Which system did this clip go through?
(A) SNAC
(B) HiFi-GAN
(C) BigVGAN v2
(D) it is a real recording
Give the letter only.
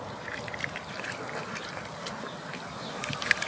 D